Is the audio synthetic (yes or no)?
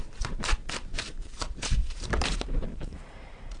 yes